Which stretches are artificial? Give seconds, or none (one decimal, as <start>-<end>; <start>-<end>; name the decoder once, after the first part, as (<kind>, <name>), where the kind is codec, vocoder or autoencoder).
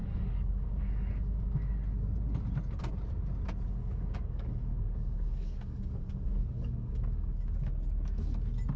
0.0-1.8 (codec, DAC); 3.8-7.7